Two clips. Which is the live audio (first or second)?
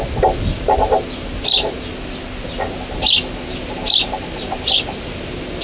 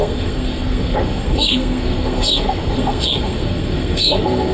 first